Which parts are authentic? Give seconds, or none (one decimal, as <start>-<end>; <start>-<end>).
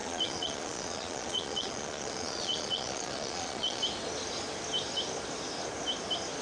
3.8-6.4